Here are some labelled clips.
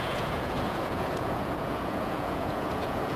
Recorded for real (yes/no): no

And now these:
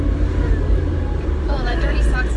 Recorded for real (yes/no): yes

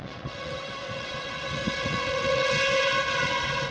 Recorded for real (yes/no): no